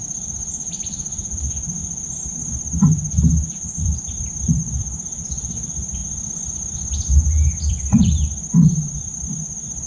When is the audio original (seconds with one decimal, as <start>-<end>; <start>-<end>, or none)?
1.8-3.8; 6.0-7.7